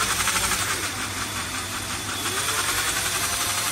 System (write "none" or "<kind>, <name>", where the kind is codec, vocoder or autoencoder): vocoder, BigVGAN v2